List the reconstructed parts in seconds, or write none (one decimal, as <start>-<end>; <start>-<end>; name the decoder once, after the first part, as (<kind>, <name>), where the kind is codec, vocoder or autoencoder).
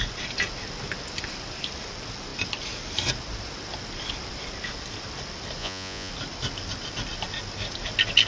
5.6-6.1 (vocoder, Vocos)